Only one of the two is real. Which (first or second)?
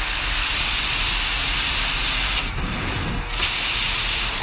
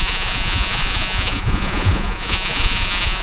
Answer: first